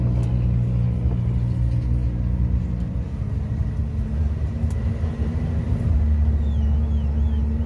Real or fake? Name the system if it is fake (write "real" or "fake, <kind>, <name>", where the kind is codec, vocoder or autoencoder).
real